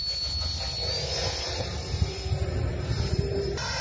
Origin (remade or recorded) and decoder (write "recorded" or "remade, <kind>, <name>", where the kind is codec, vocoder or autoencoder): recorded